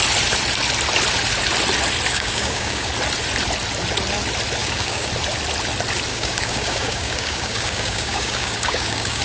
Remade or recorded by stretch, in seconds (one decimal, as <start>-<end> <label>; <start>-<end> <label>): 0.0-2.1 recorded; 2.1-2.9 remade; 2.9-4.6 recorded; 4.6-5.1 remade; 5.1-6.1 recorded; 6.1-9.2 remade